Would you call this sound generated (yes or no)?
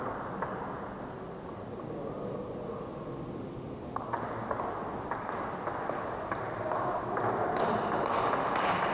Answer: no